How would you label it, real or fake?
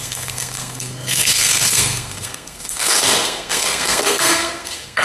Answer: fake